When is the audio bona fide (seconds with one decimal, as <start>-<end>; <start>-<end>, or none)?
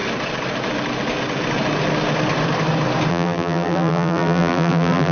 0.0-3.1